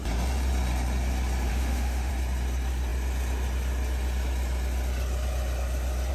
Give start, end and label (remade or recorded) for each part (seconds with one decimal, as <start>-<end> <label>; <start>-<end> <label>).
0.0-1.5 recorded; 1.5-2.1 remade; 2.1-6.1 recorded